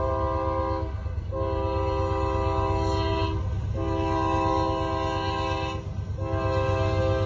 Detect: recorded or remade recorded